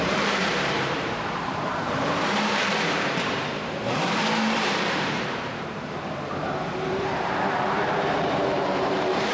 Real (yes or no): no